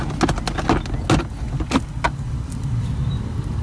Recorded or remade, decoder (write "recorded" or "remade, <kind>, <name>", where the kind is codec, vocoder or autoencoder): recorded